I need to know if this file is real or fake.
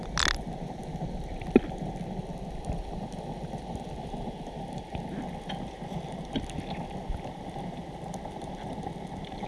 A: real